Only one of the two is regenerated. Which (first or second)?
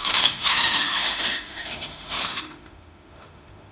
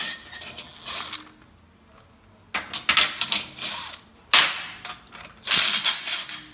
first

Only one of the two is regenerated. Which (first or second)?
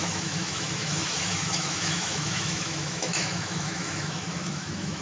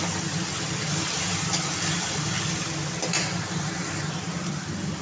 first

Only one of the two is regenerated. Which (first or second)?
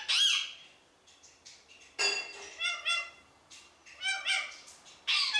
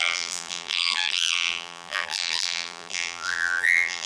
second